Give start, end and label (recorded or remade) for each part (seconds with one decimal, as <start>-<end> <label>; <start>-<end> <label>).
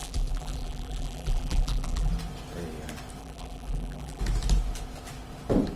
0.0-2.1 remade; 2.1-3.2 recorded; 3.2-4.2 remade; 4.2-5.8 recorded